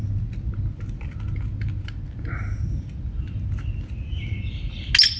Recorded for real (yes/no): yes